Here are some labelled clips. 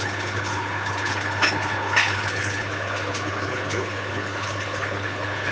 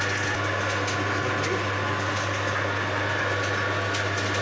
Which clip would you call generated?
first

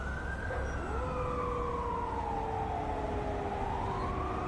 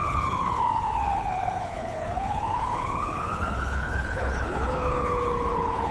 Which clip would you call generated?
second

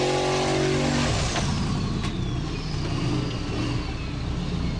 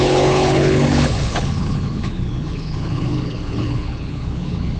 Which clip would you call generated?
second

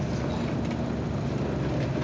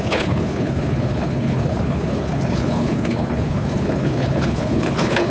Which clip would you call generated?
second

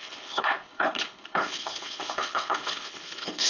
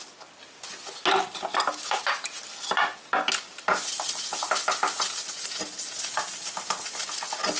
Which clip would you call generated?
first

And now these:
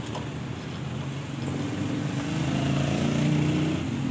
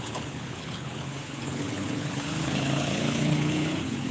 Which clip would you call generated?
second